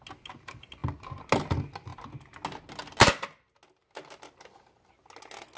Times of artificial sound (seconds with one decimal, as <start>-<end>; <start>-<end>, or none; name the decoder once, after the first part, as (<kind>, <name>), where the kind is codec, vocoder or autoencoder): none